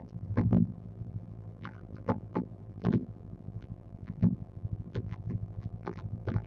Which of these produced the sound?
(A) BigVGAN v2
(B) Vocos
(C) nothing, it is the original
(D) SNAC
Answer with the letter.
A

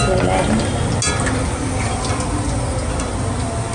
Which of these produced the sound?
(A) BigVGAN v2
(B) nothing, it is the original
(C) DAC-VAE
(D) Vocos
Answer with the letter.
B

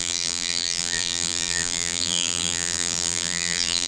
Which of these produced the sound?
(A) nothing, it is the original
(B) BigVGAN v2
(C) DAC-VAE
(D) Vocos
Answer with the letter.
B